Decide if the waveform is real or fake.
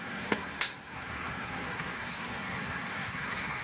fake